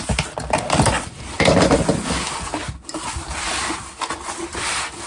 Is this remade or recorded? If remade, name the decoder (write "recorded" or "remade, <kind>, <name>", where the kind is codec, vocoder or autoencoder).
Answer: recorded